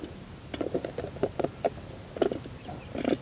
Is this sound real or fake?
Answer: real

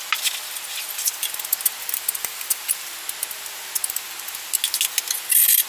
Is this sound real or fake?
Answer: real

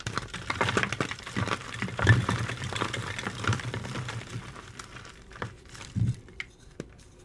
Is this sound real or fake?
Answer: fake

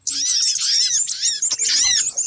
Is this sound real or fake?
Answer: real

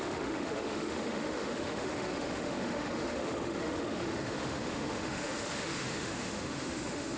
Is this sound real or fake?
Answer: fake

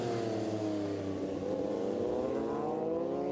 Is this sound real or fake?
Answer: real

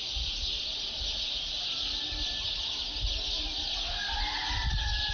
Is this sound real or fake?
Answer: real